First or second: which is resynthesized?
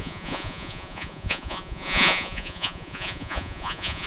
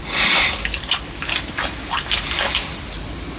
first